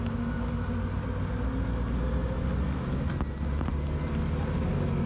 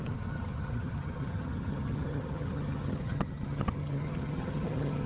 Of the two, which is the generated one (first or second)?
second